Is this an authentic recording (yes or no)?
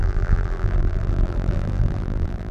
no